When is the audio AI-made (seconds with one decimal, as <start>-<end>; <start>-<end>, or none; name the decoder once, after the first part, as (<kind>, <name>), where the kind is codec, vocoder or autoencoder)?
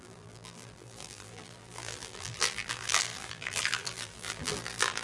0.0-5.0 (vocoder, BigVGAN v2)